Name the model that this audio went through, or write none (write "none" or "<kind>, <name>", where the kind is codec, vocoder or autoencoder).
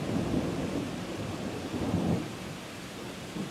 none